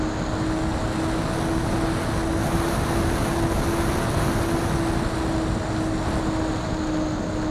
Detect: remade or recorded recorded